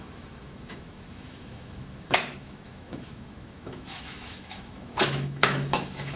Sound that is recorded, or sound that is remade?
remade